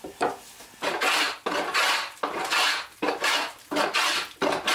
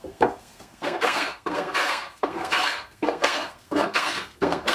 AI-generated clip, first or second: second